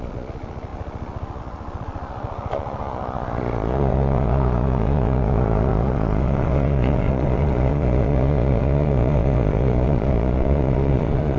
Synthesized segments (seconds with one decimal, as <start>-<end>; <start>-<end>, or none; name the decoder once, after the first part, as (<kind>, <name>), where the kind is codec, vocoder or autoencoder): 0.0-11.4 (vocoder, Vocos)